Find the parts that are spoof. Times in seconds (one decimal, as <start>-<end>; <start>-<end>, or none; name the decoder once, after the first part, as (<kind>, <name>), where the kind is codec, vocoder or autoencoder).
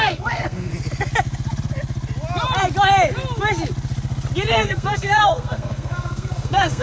0.0-0.7 (codec, SNAC); 4.5-6.8